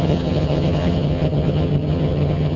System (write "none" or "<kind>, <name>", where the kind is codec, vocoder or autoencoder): vocoder, HiFi-GAN